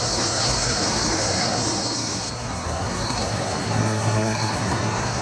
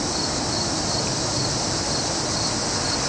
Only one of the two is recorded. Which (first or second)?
second